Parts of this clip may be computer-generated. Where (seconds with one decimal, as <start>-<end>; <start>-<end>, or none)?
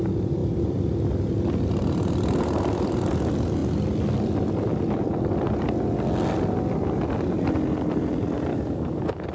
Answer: 8.5-9.3